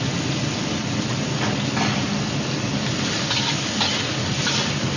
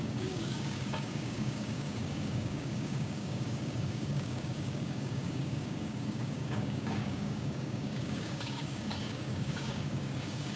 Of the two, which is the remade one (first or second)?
second